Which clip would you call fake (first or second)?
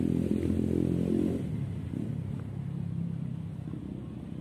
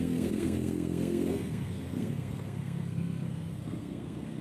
second